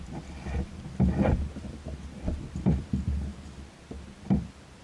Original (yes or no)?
yes